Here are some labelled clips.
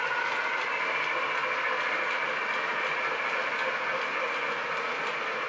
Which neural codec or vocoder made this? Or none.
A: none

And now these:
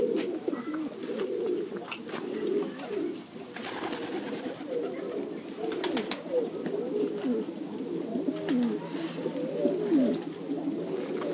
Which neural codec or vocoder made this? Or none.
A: none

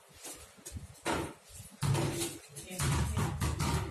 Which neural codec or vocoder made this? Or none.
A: none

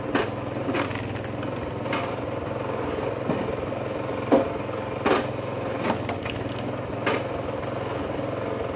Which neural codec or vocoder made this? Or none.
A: none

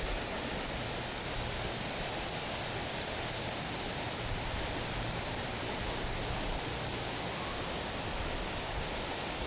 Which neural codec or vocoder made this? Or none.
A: none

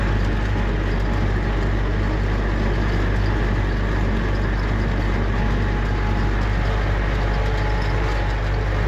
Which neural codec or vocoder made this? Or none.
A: none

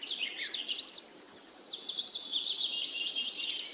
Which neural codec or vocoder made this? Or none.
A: vocoder, BigVGAN v2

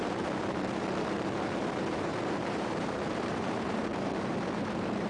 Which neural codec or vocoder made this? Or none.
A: vocoder, BigVGAN v2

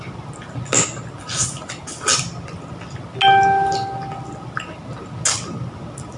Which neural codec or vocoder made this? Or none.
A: none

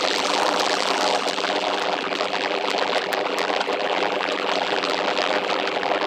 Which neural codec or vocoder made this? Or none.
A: vocoder, BigVGAN v2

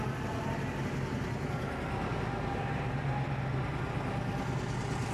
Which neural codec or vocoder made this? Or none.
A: none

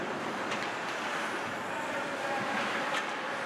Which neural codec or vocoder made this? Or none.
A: vocoder, BigVGAN v2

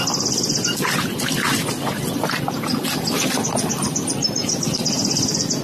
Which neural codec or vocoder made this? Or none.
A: none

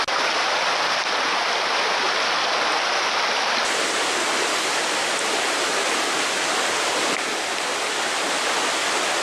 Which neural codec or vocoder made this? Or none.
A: none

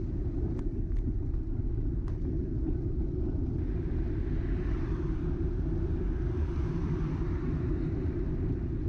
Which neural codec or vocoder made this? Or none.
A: vocoder, BigVGAN v2